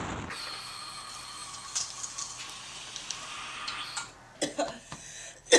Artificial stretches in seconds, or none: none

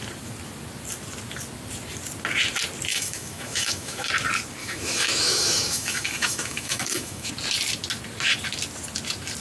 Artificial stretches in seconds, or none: 2.9-4.1 (autoencoder, DAC-VAE); 4.6-7.3

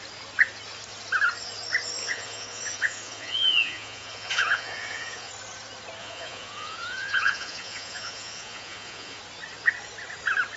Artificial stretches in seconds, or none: 2.0-5.3 (vocoder, Vocos); 6.0-9.2